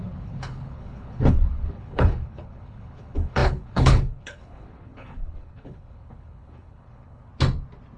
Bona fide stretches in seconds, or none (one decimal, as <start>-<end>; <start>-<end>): 7.3-8.0